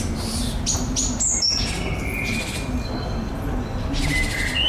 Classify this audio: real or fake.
real